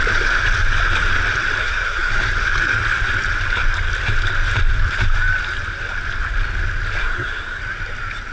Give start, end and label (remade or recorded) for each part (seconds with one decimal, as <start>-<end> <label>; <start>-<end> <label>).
0.0-1.6 recorded; 1.6-2.1 remade; 2.1-7.0 recorded; 7.0-7.6 remade; 7.6-8.3 recorded